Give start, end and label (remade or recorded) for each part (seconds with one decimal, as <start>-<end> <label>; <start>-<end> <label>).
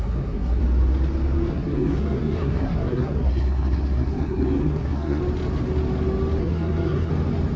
0.0-0.6 remade; 0.6-1.5 recorded; 1.5-5.2 remade; 5.2-6.4 recorded; 6.4-7.1 remade; 7.1-7.6 recorded